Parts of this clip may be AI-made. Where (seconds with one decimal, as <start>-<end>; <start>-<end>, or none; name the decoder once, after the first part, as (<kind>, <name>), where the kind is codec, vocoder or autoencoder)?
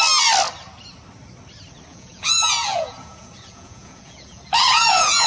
1.9-5.3 (vocoder, Vocos)